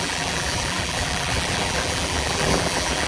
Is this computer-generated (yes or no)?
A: yes